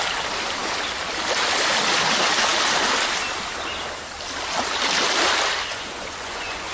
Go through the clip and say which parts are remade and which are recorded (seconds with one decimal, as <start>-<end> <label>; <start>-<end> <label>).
0.0-5.7 recorded; 5.7-6.7 remade